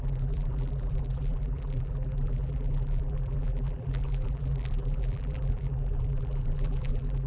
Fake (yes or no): yes